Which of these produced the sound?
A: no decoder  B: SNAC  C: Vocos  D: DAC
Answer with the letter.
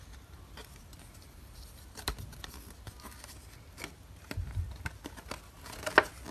A